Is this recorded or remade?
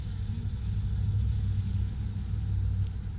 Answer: recorded